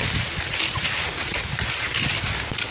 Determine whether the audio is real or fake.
real